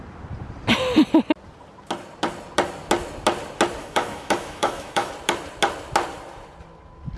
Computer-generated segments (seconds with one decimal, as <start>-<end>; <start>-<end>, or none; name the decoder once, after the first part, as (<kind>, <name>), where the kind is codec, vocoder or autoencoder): 3.8-5.1 (autoencoder, DAC-VAE)